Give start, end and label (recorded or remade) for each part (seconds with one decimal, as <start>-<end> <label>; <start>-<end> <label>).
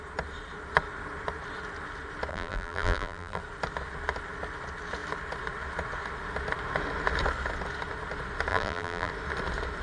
0.0-2.3 recorded; 2.3-3.4 remade; 3.4-8.5 recorded; 8.5-9.1 remade; 9.1-9.8 recorded